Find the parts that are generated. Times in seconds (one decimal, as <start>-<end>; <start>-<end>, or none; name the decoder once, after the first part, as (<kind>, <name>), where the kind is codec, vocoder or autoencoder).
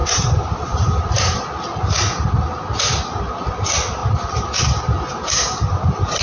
0.0-2.0 (vocoder, BigVGAN v2)